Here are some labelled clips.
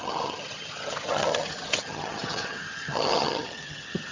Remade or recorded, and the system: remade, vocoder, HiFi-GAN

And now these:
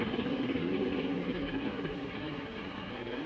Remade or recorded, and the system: remade, codec, SNAC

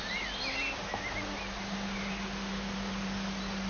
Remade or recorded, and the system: recorded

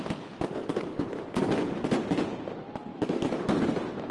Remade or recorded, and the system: recorded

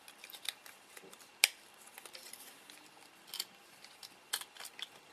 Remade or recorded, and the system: recorded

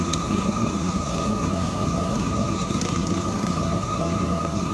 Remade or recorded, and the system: remade, codec, SNAC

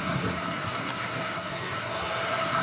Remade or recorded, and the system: remade, codec, SNAC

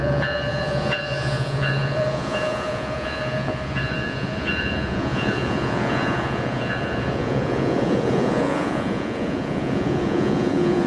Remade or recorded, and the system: remade, vocoder, Vocos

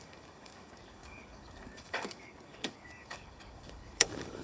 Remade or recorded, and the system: remade, codec, DAC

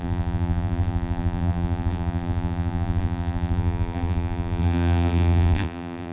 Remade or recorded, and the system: remade, vocoder, BigVGAN v2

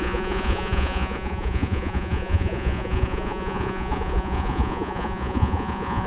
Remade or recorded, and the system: remade, vocoder, Vocos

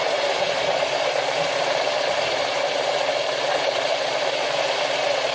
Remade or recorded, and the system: remade, vocoder, BigVGAN v2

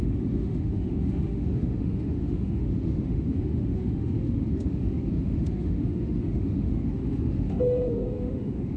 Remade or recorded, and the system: remade, autoencoder, DAC-VAE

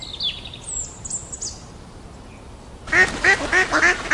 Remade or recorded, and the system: recorded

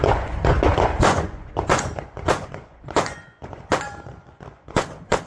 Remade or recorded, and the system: remade, vocoder, Vocos